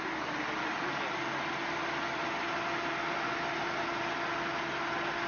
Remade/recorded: recorded